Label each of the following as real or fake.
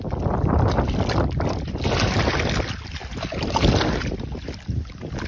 real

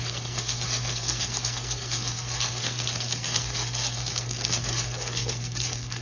fake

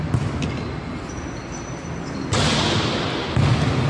real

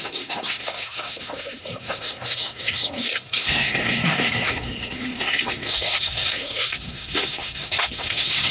fake